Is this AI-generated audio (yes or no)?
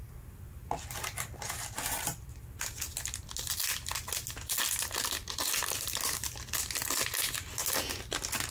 no